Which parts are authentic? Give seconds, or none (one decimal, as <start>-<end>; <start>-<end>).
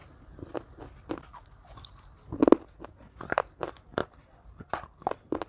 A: 0.0-4.0; 5.1-5.5